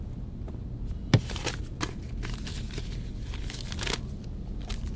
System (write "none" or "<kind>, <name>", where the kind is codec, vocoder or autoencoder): none